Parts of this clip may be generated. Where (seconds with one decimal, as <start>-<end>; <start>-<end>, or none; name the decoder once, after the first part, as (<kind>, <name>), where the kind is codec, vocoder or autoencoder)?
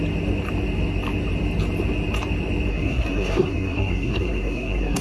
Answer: 2.7-5.0 (codec, SNAC)